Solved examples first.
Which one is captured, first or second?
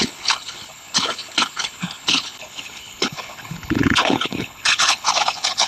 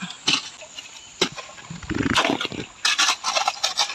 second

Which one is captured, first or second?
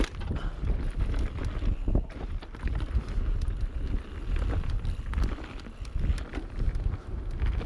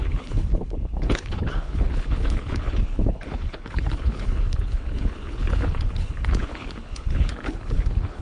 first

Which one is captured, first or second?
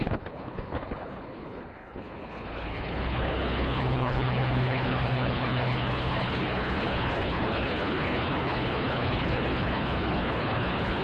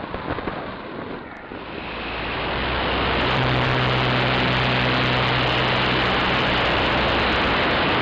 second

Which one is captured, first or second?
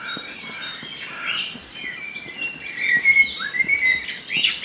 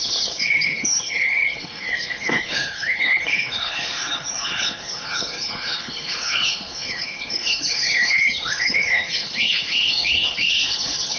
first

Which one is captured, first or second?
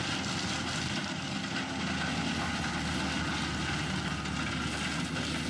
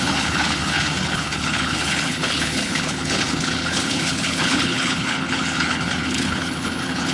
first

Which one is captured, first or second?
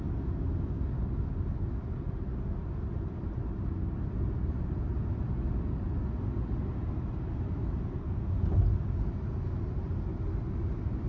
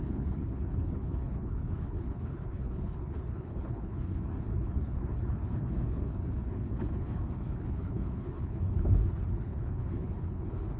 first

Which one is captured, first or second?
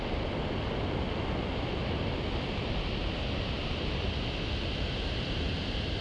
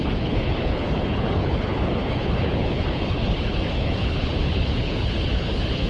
first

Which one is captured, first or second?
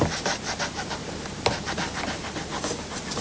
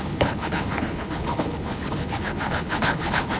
first